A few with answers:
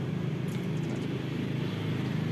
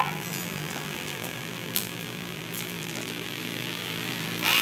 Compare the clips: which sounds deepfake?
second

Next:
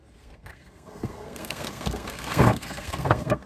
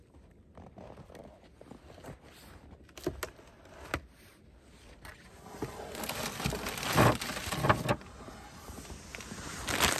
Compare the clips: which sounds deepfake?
first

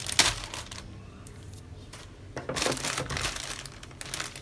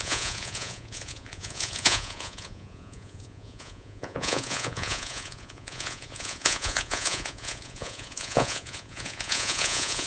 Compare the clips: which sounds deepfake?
second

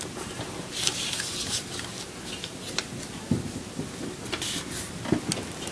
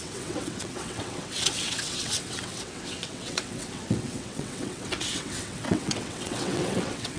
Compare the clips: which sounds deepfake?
second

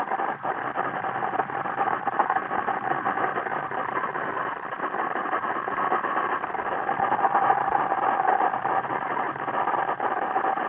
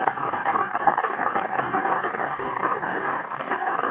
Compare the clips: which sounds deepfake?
second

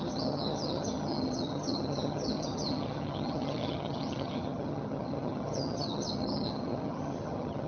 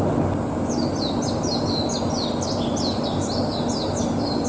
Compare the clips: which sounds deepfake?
first